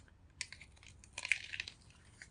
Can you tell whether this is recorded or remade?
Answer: recorded